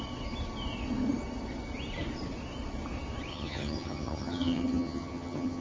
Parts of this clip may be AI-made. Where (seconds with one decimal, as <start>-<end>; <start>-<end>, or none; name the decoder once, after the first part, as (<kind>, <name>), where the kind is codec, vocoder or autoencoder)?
3.3-5.6 (vocoder, HiFi-GAN)

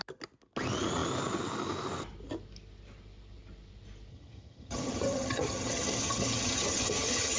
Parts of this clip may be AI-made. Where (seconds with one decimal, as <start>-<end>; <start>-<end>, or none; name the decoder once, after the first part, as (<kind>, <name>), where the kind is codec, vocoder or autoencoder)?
4.1-7.4 (vocoder, HiFi-GAN)

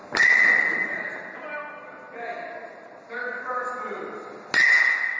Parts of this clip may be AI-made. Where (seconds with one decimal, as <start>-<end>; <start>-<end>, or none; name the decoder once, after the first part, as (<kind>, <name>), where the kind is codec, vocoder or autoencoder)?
none

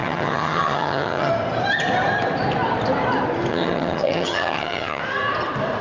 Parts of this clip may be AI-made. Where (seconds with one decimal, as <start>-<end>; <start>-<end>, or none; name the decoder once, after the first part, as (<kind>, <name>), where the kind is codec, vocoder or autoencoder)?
0.0-1.3 (vocoder, HiFi-GAN); 3.5-5.0